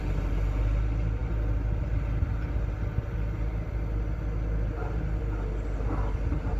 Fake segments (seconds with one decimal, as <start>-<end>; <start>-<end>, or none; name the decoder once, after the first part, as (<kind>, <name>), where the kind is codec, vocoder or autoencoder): none